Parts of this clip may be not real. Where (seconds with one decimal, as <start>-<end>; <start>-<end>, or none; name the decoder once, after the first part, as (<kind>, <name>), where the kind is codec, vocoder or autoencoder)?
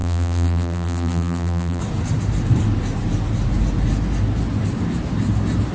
0.0-1.8 (vocoder, BigVGAN v2)